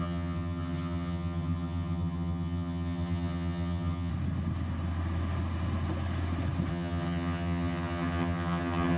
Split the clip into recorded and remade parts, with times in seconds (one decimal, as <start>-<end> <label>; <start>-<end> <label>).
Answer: 0.0-4.1 remade; 4.1-6.7 recorded; 6.7-9.0 remade